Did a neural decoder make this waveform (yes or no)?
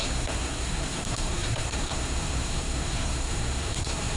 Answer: yes